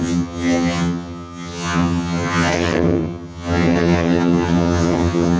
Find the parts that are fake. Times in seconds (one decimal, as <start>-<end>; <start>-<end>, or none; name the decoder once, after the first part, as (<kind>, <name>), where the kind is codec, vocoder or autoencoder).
0.0-5.4 (vocoder, HiFi-GAN)

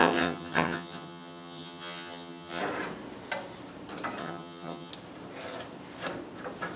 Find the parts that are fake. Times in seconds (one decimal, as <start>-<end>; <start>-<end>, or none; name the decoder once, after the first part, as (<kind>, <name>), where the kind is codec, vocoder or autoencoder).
0.0-2.6 (vocoder, HiFi-GAN); 4.2-4.9

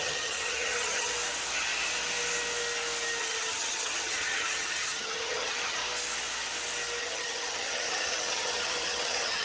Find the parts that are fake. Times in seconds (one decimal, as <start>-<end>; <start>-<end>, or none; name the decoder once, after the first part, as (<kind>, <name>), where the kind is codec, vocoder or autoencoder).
0.0-1.1 (vocoder, HiFi-GAN); 3.2-5.8; 7.0-9.4

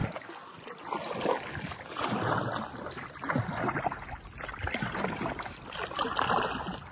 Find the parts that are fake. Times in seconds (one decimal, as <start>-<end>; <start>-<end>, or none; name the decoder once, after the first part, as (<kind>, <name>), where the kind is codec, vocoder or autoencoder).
none

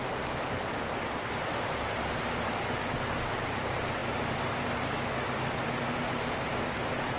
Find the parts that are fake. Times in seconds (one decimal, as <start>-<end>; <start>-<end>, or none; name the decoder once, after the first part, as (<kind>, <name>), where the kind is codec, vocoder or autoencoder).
none